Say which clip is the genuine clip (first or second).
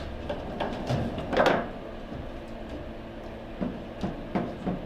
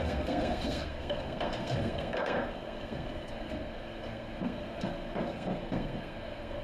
first